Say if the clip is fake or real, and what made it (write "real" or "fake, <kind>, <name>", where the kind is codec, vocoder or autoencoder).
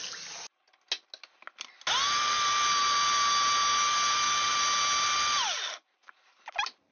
real